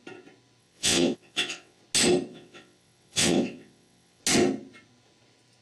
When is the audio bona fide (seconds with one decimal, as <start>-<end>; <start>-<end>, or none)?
0.0-0.6; 1.8-2.3; 4.2-5.6